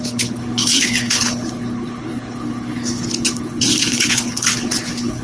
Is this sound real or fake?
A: fake